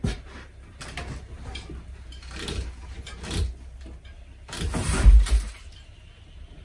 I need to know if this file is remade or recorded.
recorded